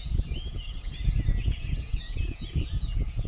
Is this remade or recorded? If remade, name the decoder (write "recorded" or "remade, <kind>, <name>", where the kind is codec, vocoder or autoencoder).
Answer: remade, vocoder, Vocos